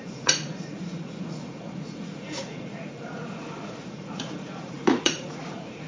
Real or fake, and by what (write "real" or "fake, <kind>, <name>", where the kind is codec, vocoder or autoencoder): fake, vocoder, Vocos